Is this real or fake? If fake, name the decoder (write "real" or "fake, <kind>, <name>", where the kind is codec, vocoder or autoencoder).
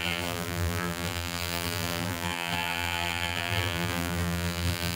fake, vocoder, BigVGAN v2